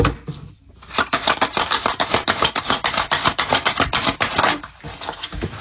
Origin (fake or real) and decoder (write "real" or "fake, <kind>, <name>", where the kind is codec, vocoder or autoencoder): real